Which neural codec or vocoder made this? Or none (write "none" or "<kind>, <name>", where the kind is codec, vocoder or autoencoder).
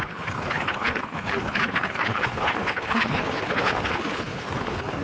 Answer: codec, HILCodec